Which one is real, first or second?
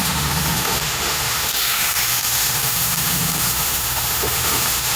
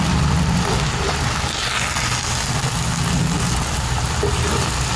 second